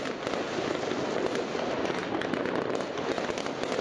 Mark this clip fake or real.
real